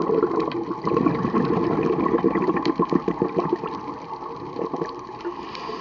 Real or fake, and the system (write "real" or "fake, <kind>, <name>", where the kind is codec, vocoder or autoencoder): real